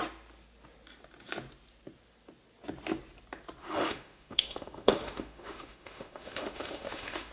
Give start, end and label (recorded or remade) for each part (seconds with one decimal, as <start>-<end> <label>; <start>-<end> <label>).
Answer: 0.0-3.6 recorded; 3.6-7.3 remade